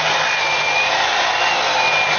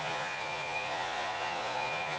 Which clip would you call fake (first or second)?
second